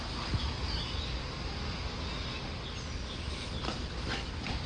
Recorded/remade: recorded